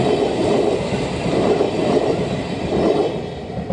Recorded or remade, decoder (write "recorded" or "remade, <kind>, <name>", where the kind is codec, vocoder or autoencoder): recorded